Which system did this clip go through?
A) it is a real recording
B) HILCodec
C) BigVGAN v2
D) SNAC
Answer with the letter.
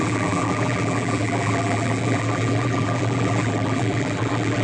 C